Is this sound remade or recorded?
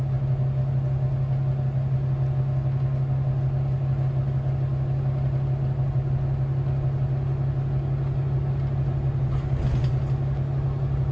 recorded